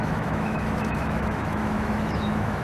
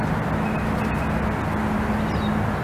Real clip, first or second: second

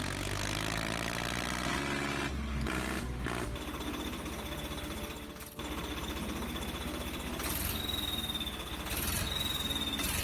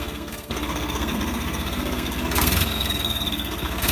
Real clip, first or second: first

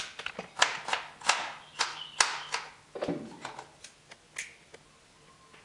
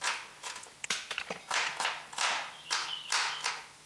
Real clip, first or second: first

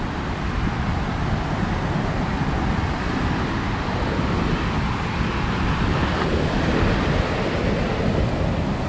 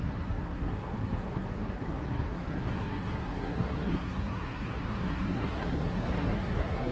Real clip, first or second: first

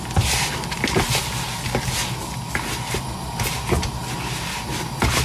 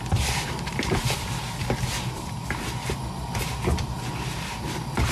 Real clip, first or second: first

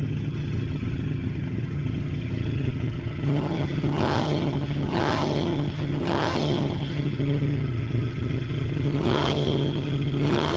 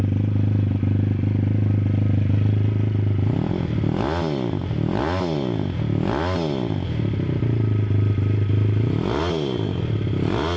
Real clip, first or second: second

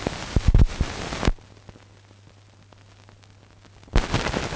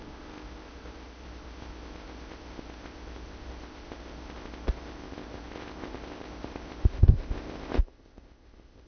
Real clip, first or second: first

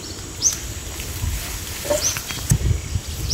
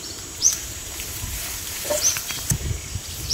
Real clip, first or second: first